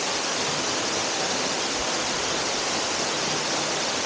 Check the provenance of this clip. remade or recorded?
recorded